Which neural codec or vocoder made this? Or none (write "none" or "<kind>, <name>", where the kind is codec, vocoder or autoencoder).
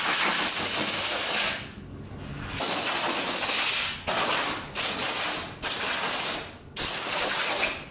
none